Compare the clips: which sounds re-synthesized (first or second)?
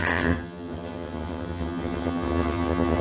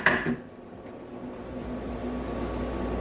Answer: first